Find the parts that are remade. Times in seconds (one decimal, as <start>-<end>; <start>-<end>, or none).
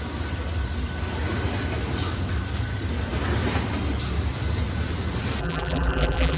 5.4-6.4